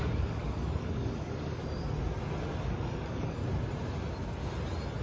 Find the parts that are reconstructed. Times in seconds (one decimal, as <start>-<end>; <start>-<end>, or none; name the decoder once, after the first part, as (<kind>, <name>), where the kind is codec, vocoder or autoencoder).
0.0-1.6 (codec, DAC); 2.6-3.4